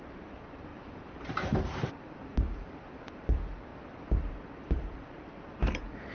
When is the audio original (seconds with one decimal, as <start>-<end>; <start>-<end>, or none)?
3.7-4.3